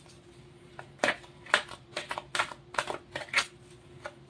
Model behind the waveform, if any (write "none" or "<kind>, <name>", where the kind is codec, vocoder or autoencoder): none